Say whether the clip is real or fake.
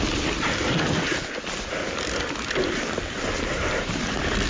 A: real